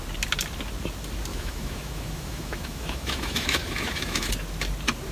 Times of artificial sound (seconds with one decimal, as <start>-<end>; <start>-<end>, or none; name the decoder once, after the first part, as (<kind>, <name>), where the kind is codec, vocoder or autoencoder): 1.3-4.3 (autoencoder, DAC-VAE)